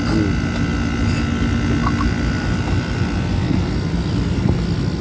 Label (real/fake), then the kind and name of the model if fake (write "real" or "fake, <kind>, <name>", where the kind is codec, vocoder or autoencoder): real